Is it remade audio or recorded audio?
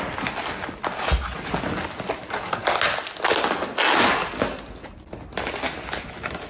recorded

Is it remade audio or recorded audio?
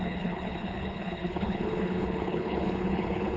remade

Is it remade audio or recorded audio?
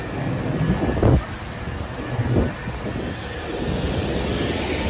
recorded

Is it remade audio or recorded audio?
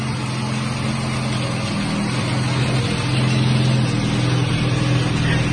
recorded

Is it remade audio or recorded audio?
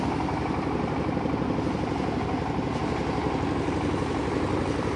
recorded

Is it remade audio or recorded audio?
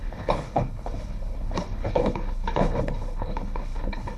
remade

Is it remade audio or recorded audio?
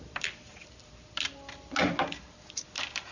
recorded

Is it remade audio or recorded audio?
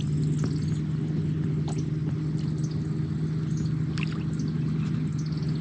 recorded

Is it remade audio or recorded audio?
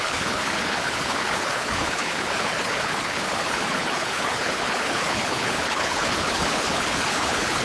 remade